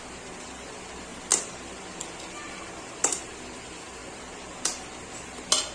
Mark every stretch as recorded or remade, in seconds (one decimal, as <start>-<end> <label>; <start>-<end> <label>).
0.0-5.7 recorded